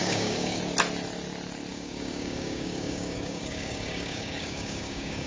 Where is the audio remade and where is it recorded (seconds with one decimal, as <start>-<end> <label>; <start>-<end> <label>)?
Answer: 0.0-0.6 remade; 0.6-1.7 recorded; 1.7-5.3 remade